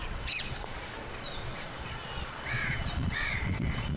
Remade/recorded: remade